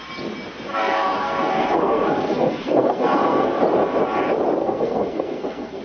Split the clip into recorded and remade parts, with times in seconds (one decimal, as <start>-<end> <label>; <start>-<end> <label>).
0.0-0.7 recorded; 0.7-3.6 remade; 3.6-4.6 recorded; 4.6-5.8 remade